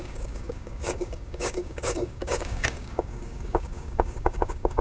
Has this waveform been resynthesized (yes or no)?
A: yes